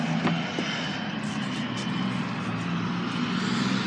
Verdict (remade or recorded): recorded